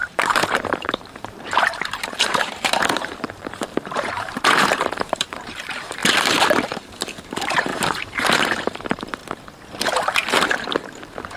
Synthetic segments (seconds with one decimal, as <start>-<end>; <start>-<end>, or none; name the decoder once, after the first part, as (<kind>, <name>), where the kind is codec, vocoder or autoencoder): 0.0-6.0 (vocoder, BigVGAN v2); 6.7-9.2; 10.8-11.4